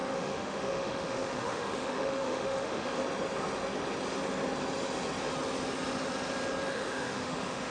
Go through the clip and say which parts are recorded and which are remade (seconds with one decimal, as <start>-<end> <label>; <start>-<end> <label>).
0.0-3.0 remade; 3.0-6.7 recorded; 6.7-7.7 remade